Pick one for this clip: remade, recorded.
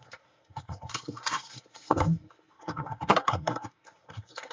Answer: remade